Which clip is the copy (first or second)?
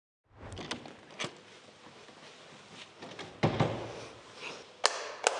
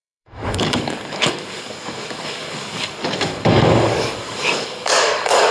second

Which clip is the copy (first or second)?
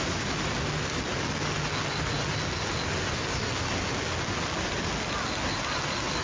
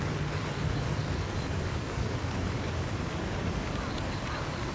second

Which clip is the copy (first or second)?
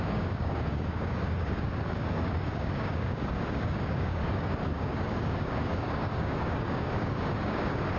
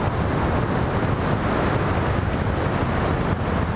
first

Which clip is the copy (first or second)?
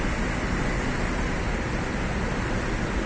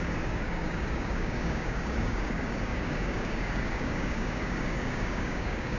second